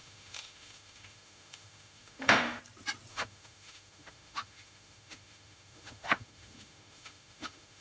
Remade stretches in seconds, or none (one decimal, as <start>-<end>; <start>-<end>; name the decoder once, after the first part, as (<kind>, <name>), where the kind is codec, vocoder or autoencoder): 0.0-2.6 (autoencoder, DAC-VAE); 3.1-7.8